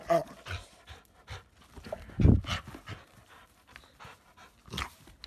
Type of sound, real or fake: real